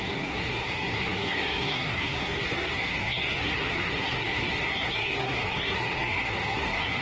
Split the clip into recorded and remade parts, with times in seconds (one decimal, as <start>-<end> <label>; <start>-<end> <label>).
0.0-7.0 remade